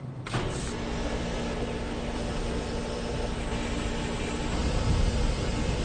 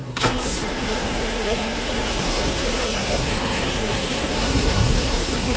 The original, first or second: first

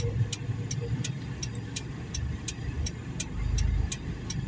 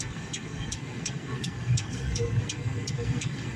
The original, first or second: first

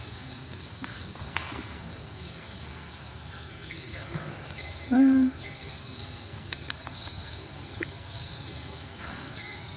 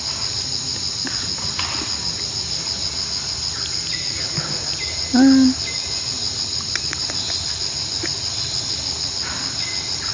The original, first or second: second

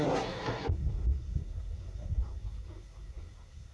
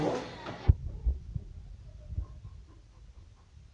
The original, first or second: second